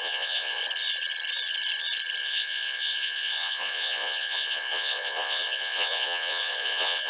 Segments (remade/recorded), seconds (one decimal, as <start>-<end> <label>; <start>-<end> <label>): 0.0-0.6 remade; 0.6-2.2 recorded; 2.2-7.1 remade